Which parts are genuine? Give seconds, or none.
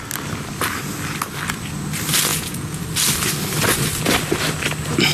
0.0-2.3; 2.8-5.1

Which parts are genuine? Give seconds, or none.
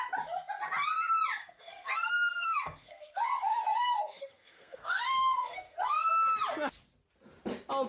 0.0-1.4; 6.1-7.9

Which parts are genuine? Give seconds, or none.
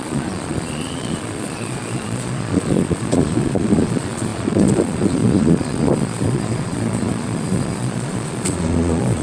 none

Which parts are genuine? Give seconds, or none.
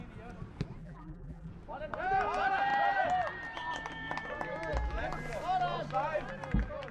0.0-0.8; 1.5-6.9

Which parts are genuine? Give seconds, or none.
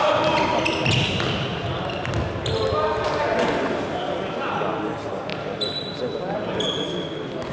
0.0-5.3; 5.9-7.5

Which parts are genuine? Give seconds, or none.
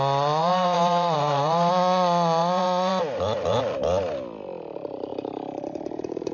0.0-0.4; 1.7-2.4; 3.6-5.1